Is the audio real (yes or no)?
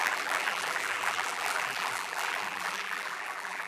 no